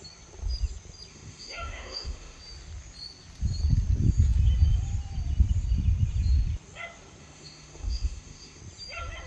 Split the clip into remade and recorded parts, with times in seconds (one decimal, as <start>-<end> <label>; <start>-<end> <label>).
0.0-1.1 recorded; 1.1-2.4 remade; 2.4-7.2 recorded; 7.2-8.6 remade; 8.6-9.3 recorded